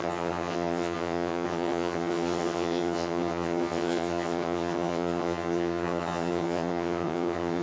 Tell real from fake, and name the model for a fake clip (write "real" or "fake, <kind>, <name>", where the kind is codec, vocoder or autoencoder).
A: fake, vocoder, HiFi-GAN